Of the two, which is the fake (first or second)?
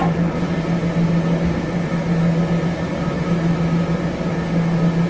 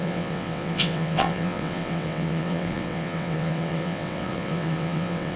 second